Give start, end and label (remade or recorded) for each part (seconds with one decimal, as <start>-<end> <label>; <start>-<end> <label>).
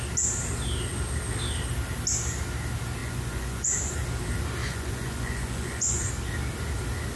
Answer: 0.0-3.0 recorded; 3.0-3.9 remade; 3.9-4.6 recorded; 4.6-6.1 remade; 6.1-7.2 recorded